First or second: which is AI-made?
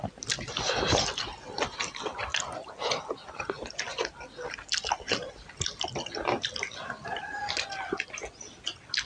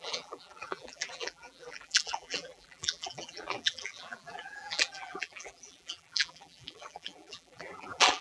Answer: second